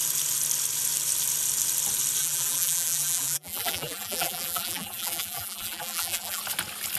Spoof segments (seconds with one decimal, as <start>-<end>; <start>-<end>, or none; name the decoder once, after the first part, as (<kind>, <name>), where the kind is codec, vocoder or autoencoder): 2.2-6.4 (vocoder, BigVGAN v2)